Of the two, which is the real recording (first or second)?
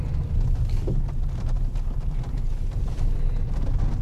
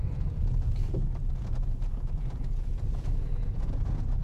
first